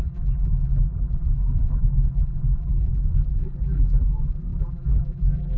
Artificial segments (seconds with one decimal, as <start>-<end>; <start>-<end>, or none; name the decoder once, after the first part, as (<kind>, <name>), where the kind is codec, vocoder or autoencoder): 0.0-5.6 (vocoder, BigVGAN v2)